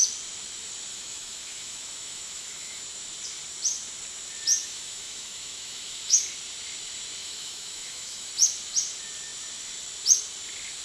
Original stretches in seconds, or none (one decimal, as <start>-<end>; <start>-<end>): 0.0-0.9; 2.8-4.6; 6.2-7.2; 8.3-10.8